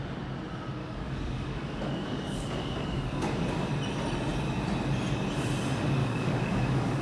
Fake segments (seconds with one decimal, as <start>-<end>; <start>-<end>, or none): 0.8-3.7; 6.0-7.0